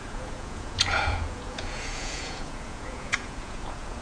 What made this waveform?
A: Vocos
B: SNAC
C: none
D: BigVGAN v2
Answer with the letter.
A